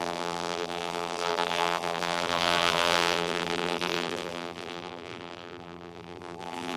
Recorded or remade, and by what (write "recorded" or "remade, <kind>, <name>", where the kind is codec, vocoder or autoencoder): remade, vocoder, BigVGAN v2